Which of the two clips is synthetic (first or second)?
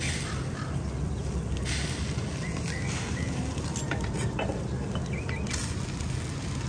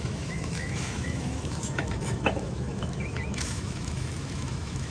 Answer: second